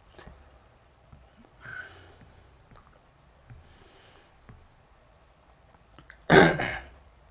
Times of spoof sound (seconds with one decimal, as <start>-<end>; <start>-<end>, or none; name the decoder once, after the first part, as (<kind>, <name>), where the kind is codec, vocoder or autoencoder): 0.0-1.7 (vocoder, Vocos); 2.9-3.4; 4.8-7.3